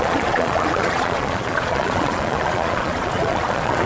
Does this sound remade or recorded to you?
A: remade